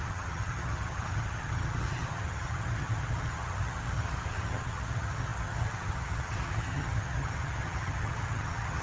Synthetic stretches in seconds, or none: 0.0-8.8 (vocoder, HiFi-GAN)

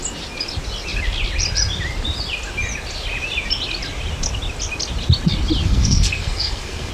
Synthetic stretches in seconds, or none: 5.6-6.9 (codec, SNAC)